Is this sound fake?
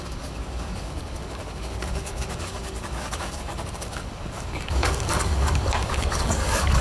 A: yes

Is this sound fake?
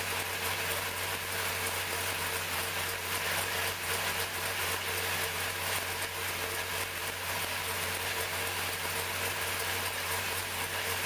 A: no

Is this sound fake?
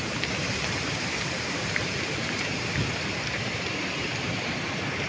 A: yes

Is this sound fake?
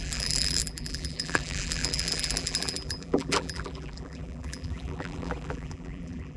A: yes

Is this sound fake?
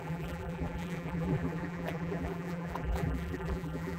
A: yes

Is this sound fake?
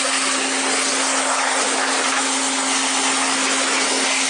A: no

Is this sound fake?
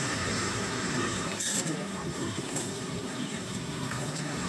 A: yes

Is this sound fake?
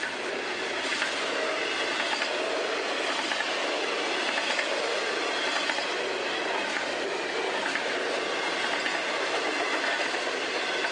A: no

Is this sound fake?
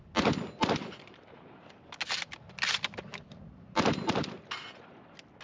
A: no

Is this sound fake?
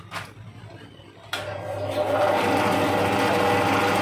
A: no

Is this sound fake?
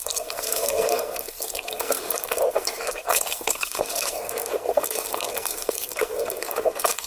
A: yes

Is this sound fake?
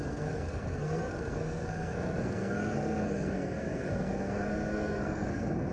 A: yes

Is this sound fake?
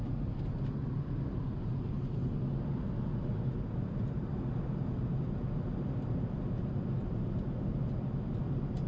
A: no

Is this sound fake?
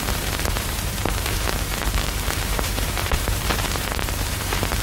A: yes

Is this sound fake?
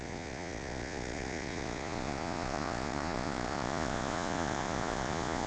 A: yes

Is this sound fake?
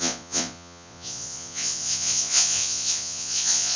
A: yes